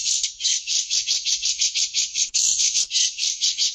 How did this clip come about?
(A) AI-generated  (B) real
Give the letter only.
A